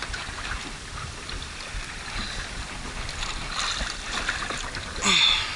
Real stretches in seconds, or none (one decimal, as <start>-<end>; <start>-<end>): 0.0-5.6